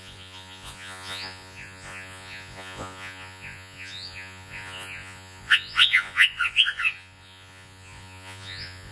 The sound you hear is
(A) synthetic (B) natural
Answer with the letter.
A